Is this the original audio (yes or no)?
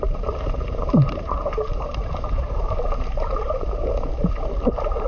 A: no